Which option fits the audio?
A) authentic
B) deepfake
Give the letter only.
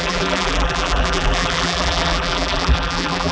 B